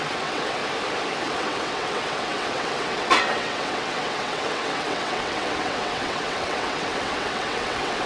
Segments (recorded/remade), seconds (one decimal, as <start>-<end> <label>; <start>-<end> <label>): 0.0-0.6 remade; 0.6-1.2 recorded; 1.2-8.1 remade